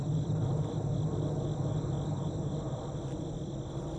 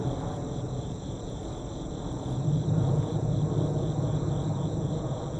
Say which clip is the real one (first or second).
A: first